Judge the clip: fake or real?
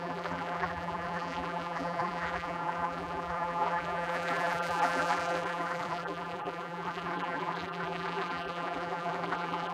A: fake